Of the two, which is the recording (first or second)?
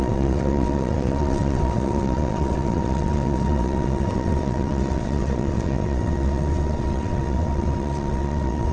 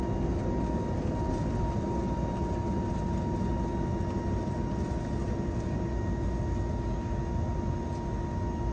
second